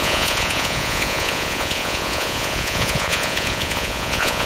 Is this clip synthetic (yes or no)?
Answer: yes